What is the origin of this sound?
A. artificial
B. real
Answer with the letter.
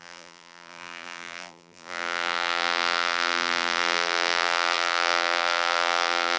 A